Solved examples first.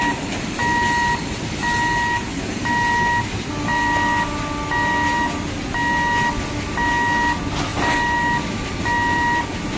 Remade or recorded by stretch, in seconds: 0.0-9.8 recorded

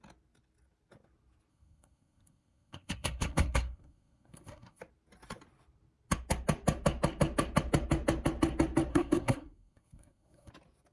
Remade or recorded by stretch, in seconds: 0.0-1.5 recorded; 1.5-4.8 remade; 4.8-8.9 recorded; 8.9-10.5 remade; 10.5-10.9 recorded